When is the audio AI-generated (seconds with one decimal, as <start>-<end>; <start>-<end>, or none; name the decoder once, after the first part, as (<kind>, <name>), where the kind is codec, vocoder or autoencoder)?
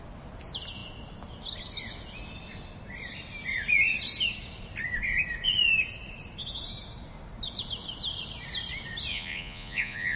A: 9.1-10.2 (vocoder, Vocos)